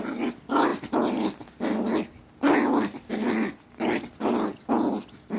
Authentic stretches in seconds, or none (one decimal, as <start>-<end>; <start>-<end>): 0.0-5.4